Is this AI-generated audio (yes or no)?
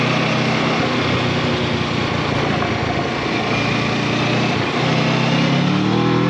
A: no